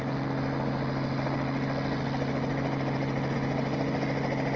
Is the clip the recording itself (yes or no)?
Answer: yes